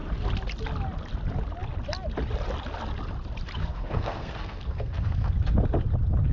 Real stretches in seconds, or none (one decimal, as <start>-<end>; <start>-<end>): 0.0-3.6; 5.3-6.3